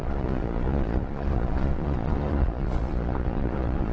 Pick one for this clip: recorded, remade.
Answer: remade